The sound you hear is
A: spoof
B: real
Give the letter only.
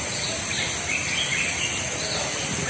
B